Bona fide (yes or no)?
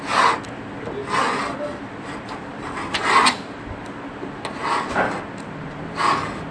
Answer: yes